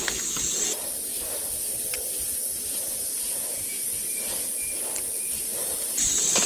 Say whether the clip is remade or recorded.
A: remade